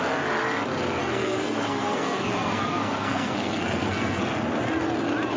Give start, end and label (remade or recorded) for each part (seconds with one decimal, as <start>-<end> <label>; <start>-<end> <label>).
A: 0.0-1.0 recorded; 1.0-4.2 remade; 4.2-5.4 recorded